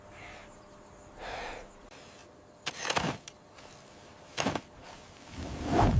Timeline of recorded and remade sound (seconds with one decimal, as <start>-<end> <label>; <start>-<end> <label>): 0.0-6.0 remade